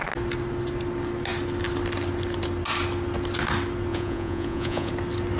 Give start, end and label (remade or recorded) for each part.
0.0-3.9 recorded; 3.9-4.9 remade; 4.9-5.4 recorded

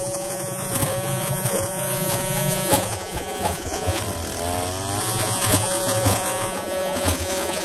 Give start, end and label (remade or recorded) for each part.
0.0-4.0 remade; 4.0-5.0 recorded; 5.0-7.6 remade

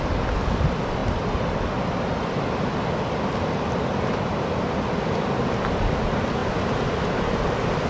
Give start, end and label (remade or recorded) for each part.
0.0-7.9 recorded

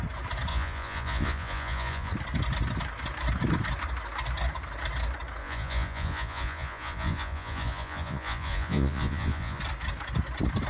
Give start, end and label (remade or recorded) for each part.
0.0-0.5 recorded; 0.5-2.1 remade; 2.1-5.4 recorded; 5.4-9.6 remade; 9.6-10.7 recorded